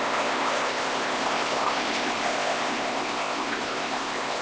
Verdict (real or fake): fake